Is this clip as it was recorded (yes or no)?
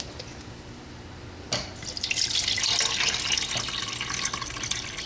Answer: yes